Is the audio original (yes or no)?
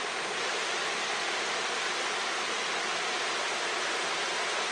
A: yes